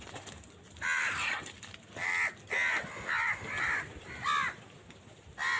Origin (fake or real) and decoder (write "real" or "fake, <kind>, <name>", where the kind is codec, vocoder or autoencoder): real